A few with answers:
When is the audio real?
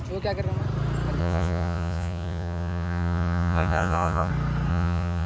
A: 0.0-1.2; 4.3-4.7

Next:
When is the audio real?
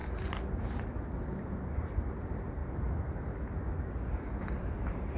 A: 0.0-0.5; 2.6-3.7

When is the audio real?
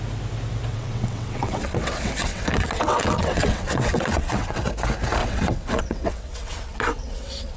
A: 0.0-0.7; 4.7-5.2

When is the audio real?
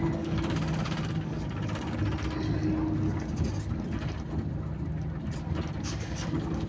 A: 2.0-5.8